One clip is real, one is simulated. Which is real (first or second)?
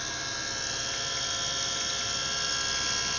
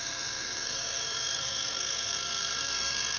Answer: first